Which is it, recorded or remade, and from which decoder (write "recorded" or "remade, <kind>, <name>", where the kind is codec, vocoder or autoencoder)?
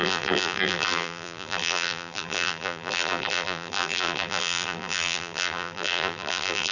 remade, vocoder, BigVGAN v2